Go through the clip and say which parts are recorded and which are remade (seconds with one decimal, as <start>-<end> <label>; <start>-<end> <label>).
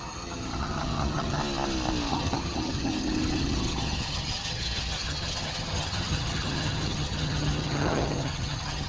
0.0-1.4 remade; 1.4-2.1 recorded; 2.1-8.9 remade